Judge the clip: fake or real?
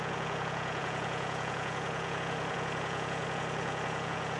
fake